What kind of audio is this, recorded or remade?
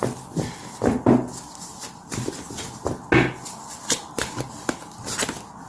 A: recorded